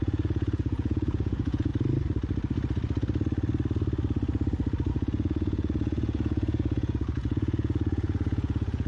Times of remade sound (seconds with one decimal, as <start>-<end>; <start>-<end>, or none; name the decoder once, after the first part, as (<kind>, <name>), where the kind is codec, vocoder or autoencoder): 0.0-1.7 (vocoder, Vocos); 4.9-8.9